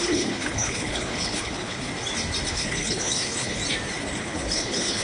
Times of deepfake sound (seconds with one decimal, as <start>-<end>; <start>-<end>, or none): 0.0-1.9; 2.5-3.6; 4.2-5.0